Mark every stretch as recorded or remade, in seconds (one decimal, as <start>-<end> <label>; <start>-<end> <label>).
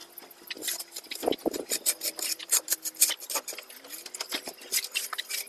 0.0-5.5 recorded